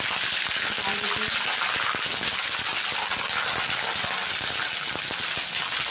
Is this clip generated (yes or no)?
no